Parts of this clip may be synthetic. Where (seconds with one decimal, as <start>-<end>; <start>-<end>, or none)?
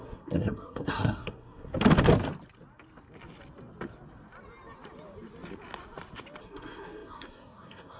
0.0-1.7; 6.4-8.0